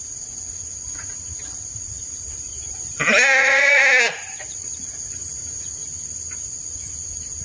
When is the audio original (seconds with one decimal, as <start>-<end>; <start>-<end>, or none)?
2.5-3.4; 3.8-4.4; 5.8-7.4